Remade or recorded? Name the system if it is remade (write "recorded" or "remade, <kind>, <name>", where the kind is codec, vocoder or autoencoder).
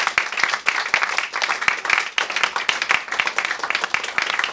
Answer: recorded